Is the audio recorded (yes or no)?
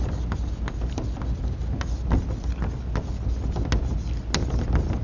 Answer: yes